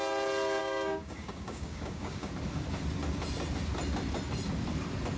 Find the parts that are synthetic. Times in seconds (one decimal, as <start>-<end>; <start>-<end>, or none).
0.6-2.3